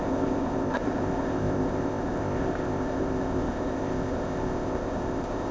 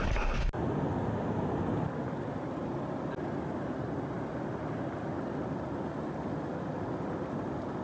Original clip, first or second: second